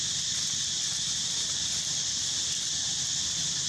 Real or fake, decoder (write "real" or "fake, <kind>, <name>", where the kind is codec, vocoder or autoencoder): real